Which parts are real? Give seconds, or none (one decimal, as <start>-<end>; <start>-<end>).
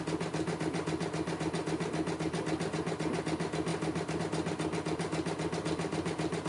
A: 0.0-6.5